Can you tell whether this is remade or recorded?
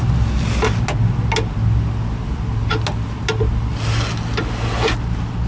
recorded